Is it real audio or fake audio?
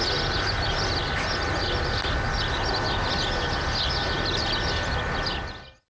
real